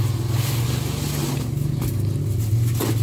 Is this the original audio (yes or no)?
yes